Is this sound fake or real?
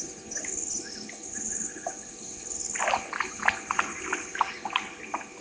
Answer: real